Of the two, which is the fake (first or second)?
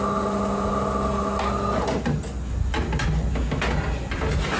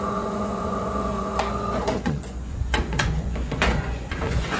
second